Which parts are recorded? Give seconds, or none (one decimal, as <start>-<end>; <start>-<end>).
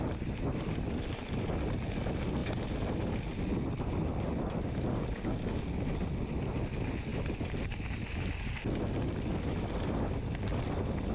0.0-11.1